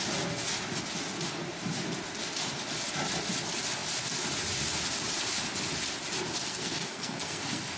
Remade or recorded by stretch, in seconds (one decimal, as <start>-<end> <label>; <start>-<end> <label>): 0.0-6.4 recorded; 6.4-7.8 remade